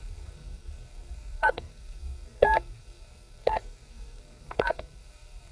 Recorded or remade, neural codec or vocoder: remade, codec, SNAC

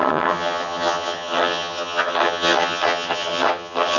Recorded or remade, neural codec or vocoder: remade, vocoder, HiFi-GAN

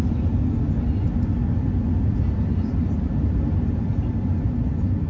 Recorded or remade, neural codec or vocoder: recorded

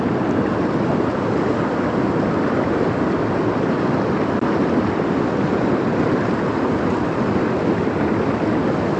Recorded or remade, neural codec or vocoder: recorded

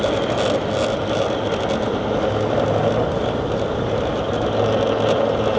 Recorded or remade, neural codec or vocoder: recorded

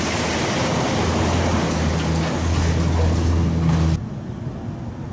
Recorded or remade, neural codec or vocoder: recorded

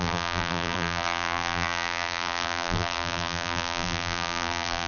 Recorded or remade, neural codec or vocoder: remade, vocoder, BigVGAN v2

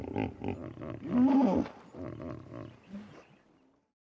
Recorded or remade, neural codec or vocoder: recorded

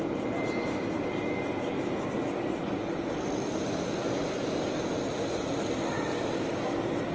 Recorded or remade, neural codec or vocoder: recorded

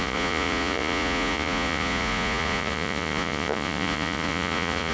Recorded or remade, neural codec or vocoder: remade, vocoder, Vocos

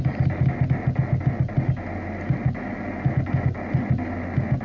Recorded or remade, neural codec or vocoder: recorded